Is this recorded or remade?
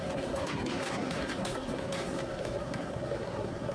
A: remade